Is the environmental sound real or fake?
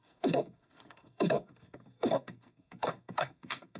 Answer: fake